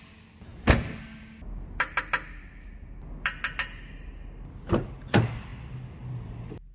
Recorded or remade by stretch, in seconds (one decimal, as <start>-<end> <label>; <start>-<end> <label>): 0.0-6.7 recorded